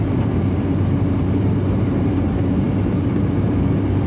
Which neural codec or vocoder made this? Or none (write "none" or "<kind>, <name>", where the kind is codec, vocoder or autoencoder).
vocoder, BigVGAN v2